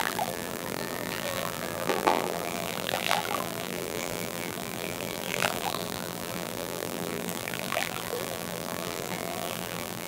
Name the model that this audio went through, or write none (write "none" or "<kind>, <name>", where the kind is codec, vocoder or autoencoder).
vocoder, BigVGAN v2